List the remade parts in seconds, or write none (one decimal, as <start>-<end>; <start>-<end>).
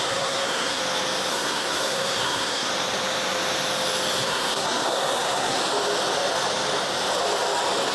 0.0-0.8; 1.3-2.7; 4.2-5.6